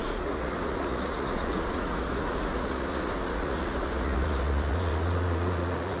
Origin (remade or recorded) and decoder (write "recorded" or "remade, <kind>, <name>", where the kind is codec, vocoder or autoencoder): remade, vocoder, Vocos